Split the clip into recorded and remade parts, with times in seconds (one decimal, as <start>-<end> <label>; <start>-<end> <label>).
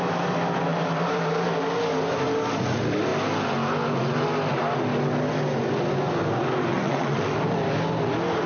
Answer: 0.0-6.7 recorded; 6.7-7.2 remade; 7.2-8.5 recorded